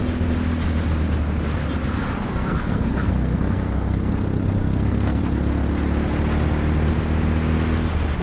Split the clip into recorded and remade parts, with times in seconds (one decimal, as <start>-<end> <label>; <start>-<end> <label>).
0.0-2.3 recorded; 2.3-4.1 remade; 4.1-4.6 recorded; 4.6-5.2 remade; 5.2-8.2 recorded